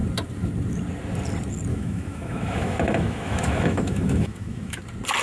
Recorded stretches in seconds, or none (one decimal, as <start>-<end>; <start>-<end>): 0.0-1.7; 4.8-5.2